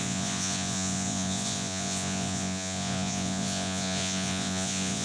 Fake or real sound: fake